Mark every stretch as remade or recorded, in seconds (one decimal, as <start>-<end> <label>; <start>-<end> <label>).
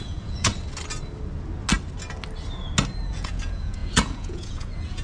0.0-0.5 remade; 0.5-3.1 recorded; 3.1-5.0 remade